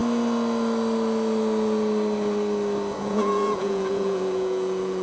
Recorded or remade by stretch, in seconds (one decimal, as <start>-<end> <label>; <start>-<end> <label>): 0.0-3.0 recorded; 3.0-5.0 remade